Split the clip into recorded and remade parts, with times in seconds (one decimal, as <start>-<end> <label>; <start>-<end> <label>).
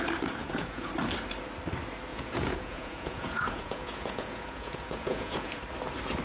0.0-0.4 recorded; 0.4-0.9 remade; 0.9-2.1 recorded; 2.1-5.6 remade; 5.6-6.2 recorded